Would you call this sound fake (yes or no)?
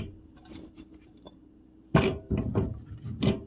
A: yes